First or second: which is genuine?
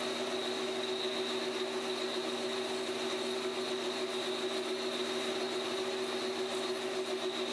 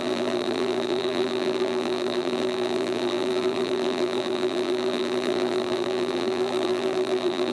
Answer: first